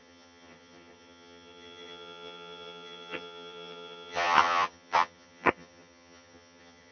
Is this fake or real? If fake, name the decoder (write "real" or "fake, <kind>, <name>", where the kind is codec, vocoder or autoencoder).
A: fake, vocoder, HiFi-GAN